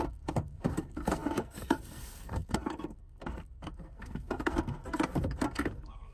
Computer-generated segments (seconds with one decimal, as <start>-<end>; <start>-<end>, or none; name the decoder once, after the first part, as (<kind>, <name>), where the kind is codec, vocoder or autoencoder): 0.0-6.1 (codec, SNAC)